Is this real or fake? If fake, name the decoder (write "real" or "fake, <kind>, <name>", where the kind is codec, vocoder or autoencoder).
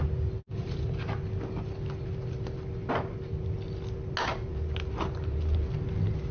real